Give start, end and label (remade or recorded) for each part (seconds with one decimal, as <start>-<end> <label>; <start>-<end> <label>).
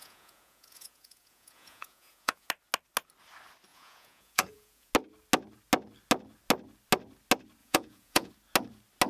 0.0-2.5 remade; 2.5-3.7 recorded; 3.7-4.9 remade; 4.9-7.6 recorded; 7.6-8.3 remade; 8.3-9.1 recorded